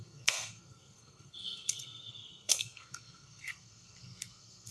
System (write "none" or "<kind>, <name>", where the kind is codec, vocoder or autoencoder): codec, SNAC